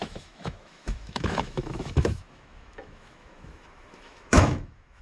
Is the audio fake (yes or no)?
yes